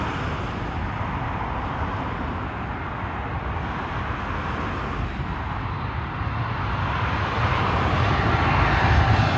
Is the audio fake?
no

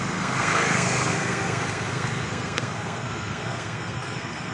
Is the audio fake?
yes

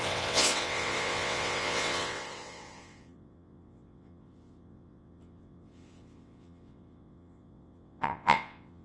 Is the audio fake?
yes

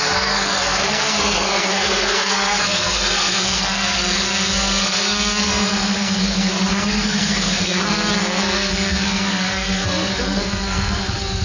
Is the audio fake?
yes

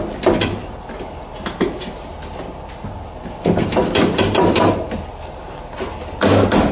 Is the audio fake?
no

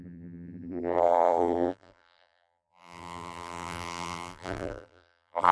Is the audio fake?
yes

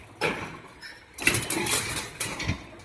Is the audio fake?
no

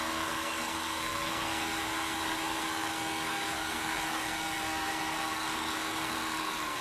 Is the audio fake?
yes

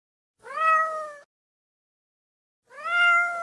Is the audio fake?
no